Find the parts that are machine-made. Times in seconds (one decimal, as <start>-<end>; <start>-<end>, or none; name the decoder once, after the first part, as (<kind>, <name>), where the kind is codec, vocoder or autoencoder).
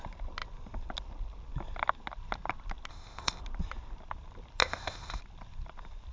2.9-3.4 (codec, ZipCodec); 4.6-5.2